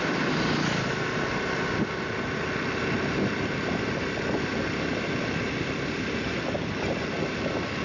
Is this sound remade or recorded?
recorded